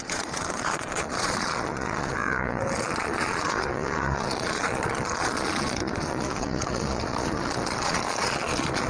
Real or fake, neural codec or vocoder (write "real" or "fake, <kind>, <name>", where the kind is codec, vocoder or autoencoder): fake, vocoder, Vocos